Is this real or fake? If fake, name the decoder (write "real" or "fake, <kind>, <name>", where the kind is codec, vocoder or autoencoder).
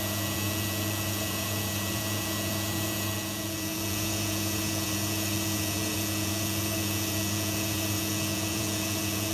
fake, vocoder, Vocos